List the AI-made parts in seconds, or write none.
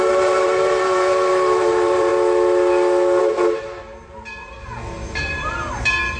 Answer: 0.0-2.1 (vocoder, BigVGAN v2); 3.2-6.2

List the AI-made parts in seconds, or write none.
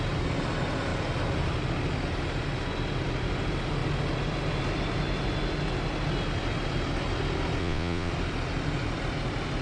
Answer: 7.6-8.1 (vocoder, Vocos)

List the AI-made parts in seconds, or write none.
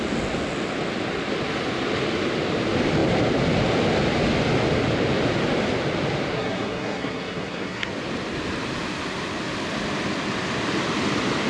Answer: 6.3-7.9 (codec, SNAC)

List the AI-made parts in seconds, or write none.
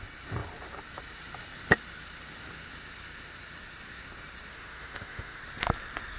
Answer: 4.5-5.4 (autoencoder, DAC-VAE)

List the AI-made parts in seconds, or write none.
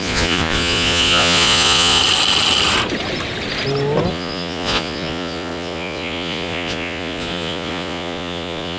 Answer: 0.0-2.0 (vocoder, Vocos); 4.1-8.8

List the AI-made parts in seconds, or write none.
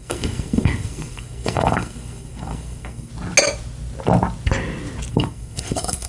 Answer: 0.0-3.1 (codec, SNAC); 5.1-6.1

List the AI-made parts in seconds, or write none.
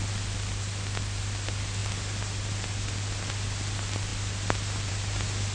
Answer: 1.8-2.7 (vocoder, BigVGAN v2); 4.1-4.9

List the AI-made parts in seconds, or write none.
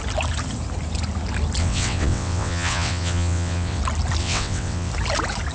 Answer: 1.6-3.8 (vocoder, WaveNeXt); 4.2-4.9